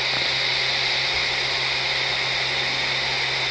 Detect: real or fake real